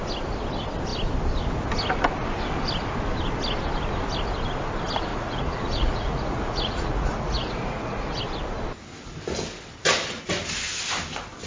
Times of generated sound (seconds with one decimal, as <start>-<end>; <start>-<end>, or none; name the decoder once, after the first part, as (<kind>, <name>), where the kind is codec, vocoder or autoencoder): 5.1-8.2 (vocoder, Vocos)